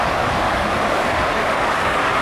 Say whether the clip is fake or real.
fake